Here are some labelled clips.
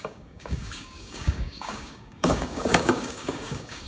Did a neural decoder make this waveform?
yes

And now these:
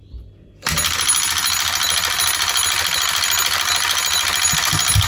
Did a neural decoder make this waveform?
no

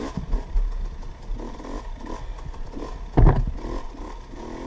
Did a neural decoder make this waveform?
no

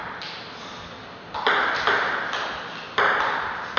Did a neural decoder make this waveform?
no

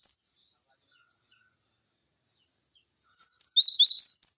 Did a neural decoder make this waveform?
no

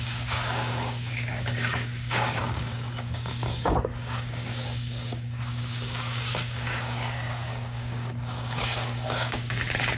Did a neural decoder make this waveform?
yes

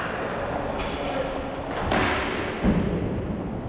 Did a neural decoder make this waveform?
no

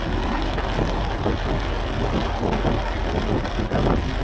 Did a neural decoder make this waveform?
no